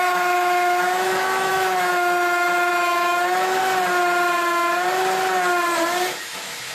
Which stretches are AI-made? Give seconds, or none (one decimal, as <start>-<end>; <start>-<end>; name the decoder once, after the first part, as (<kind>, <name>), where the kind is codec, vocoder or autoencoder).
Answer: 0.0-3.6 (autoencoder, DAC-VAE); 6.2-6.7